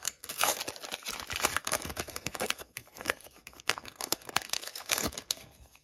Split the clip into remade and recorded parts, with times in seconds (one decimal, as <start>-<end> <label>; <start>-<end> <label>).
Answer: 0.0-0.6 remade; 0.6-1.6 recorded; 1.6-5.8 remade